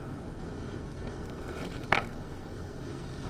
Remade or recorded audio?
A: remade